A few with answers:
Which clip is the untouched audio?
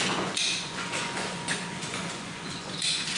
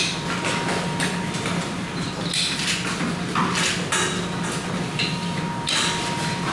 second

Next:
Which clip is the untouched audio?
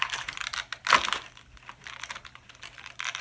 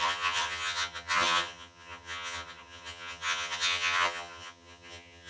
first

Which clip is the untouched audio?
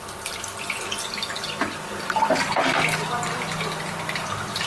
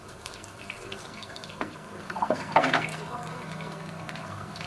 first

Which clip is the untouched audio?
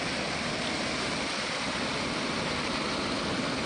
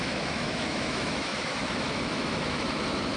first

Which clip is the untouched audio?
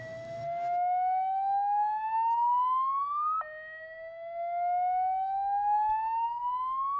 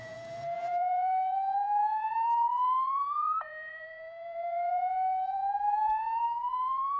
first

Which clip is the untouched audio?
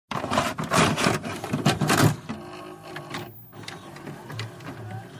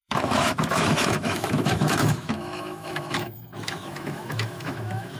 first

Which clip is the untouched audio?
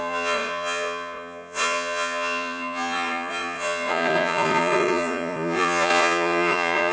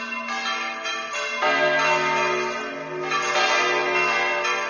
second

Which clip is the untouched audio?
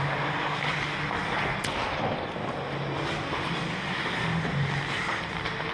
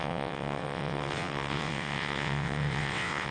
first